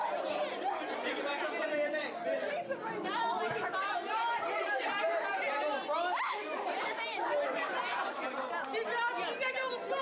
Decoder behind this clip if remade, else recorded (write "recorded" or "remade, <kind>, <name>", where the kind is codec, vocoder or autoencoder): recorded